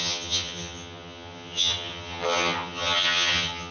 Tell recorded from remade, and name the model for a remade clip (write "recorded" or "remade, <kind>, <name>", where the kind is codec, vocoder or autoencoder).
remade, vocoder, HiFi-GAN